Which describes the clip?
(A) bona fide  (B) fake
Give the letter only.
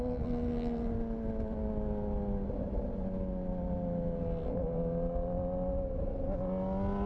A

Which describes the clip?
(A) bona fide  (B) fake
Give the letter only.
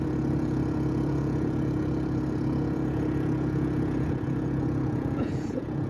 B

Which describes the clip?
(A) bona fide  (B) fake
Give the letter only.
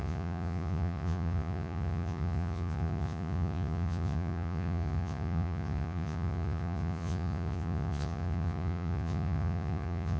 B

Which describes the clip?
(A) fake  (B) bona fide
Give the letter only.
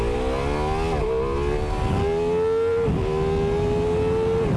B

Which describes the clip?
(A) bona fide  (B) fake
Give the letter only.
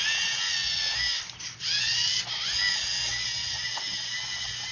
A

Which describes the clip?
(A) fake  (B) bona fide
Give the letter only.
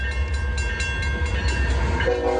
B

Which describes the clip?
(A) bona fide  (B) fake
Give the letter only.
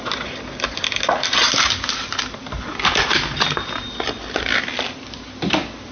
A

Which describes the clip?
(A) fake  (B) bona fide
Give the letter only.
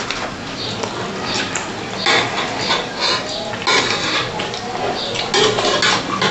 B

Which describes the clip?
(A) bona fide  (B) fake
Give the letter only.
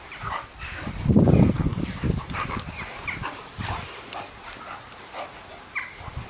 A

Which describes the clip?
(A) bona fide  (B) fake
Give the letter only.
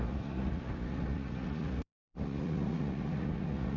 B